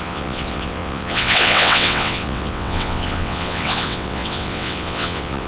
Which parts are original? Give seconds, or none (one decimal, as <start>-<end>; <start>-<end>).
none